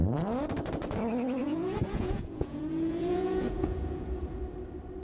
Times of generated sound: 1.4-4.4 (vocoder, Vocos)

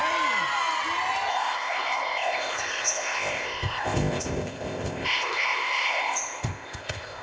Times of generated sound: 1.3-7.2 (codec, ZipCodec)